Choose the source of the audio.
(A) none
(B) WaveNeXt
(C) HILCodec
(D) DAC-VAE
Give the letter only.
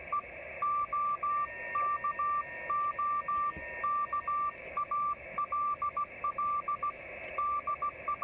A